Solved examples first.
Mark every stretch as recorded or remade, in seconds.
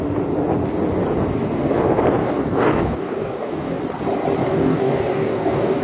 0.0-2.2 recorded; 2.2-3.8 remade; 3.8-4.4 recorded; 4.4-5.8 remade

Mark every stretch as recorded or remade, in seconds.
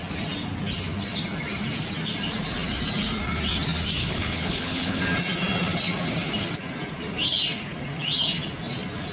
0.0-4.0 recorded; 4.0-5.0 remade; 5.0-9.1 recorded